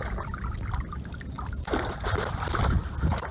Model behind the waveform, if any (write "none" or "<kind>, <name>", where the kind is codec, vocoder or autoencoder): none